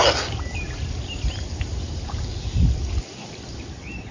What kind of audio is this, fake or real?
real